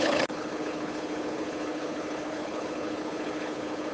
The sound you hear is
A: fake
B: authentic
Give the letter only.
A